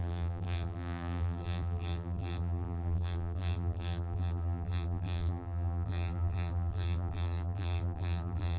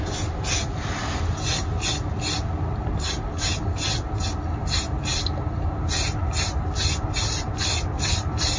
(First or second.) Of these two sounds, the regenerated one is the first